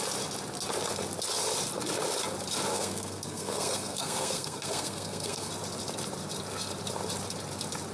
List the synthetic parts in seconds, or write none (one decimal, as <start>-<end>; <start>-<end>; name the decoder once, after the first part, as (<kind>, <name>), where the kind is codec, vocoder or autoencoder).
2.7-5.5 (codec, SNAC)